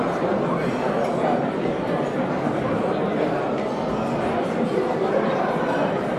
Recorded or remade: recorded